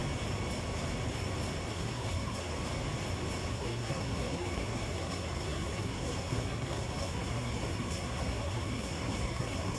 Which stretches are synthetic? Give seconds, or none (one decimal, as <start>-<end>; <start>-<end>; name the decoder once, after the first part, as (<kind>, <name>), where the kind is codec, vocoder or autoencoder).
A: 1.7-2.5 (codec, SNAC); 3.5-9.8